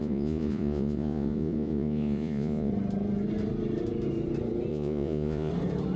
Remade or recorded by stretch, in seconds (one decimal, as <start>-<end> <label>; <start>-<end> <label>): 0.0-2.7 remade; 2.7-4.7 recorded; 4.7-5.5 remade; 5.5-6.0 recorded